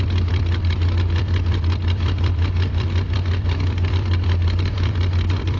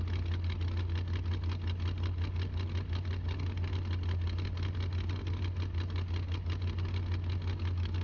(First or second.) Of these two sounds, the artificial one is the first